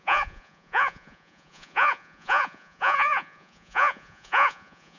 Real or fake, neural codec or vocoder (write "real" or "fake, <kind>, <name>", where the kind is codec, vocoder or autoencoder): fake, vocoder, Vocos